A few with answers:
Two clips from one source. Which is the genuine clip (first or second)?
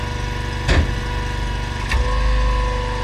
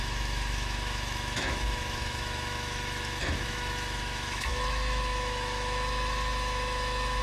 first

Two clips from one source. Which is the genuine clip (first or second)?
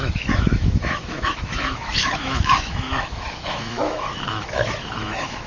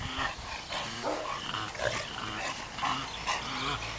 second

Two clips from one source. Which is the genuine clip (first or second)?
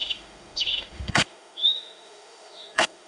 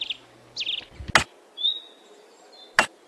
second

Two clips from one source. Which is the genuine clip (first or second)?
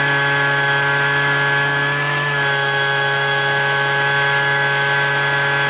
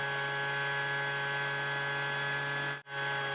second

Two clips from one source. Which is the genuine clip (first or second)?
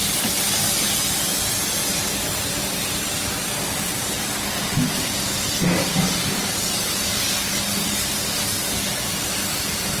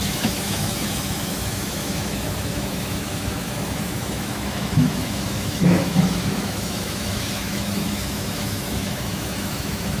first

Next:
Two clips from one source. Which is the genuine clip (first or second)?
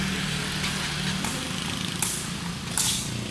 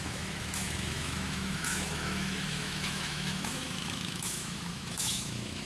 first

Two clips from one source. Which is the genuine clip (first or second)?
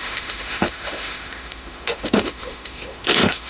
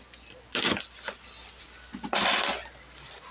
second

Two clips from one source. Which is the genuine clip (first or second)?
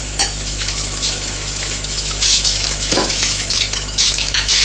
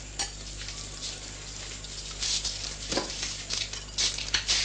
second